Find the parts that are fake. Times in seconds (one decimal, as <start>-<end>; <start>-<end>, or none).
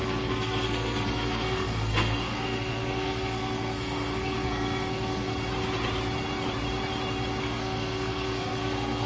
0.0-5.3; 7.4-9.1